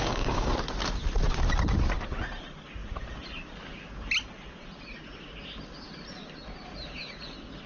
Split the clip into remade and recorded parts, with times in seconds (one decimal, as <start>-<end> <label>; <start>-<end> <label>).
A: 0.0-0.5 remade; 0.5-7.7 recorded